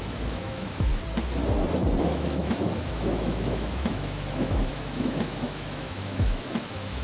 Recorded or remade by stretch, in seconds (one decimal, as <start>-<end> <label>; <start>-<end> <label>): 0.0-0.9 remade; 0.9-2.0 recorded; 2.0-7.0 remade